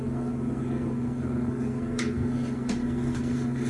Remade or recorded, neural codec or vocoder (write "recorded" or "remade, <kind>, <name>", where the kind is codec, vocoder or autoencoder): remade, codec, SNAC